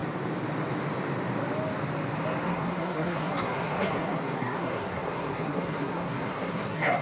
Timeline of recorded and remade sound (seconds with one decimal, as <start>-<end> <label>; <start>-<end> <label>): 0.0-2.5 recorded; 2.5-7.0 remade